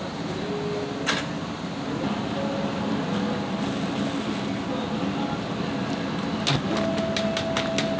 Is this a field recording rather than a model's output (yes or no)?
yes